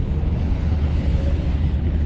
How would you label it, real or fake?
fake